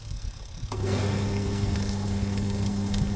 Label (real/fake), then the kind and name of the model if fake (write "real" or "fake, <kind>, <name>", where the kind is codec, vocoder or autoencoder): fake, codec, SNAC